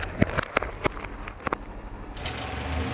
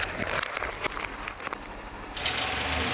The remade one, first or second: second